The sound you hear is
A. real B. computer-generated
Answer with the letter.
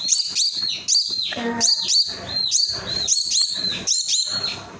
A